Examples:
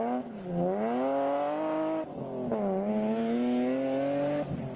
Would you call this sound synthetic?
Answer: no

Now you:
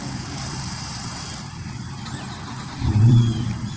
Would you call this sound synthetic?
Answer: yes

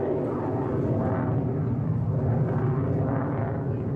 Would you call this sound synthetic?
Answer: no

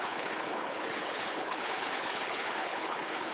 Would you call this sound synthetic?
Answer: yes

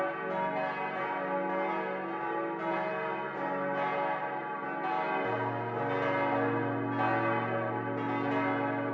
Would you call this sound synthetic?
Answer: no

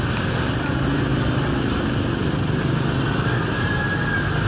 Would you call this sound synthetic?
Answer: no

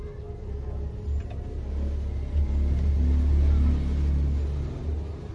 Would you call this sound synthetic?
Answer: no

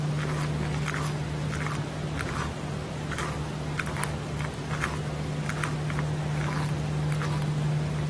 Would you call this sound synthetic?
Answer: no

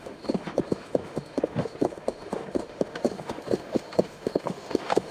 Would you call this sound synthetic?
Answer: yes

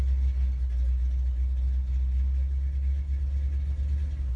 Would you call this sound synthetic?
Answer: no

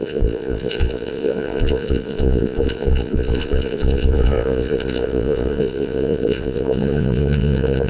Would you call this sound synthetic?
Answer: yes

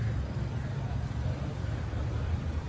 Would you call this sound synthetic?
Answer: yes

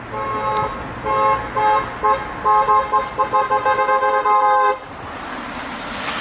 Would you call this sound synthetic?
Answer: no